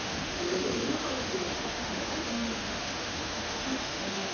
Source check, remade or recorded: remade